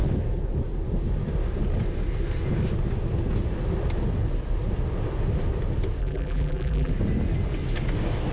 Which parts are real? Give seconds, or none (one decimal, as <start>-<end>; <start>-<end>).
0.0-6.0; 6.9-8.3